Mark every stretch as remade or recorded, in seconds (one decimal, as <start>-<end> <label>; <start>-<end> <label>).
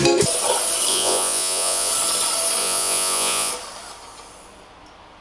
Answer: 0.0-0.9 recorded; 0.9-1.9 remade; 1.9-2.6 recorded; 2.6-3.5 remade; 3.5-5.2 recorded